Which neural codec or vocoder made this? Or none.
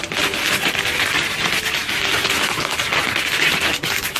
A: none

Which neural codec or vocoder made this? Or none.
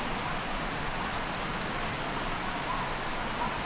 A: none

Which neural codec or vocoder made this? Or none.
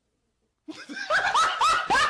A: none